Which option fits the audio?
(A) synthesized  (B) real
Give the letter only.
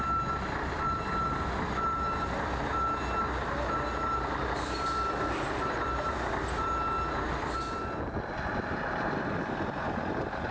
B